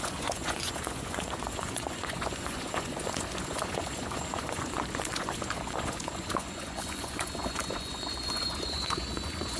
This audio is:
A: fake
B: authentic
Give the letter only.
A